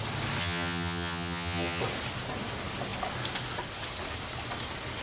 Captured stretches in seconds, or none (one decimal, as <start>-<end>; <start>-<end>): 0.0-0.4; 1.8-5.0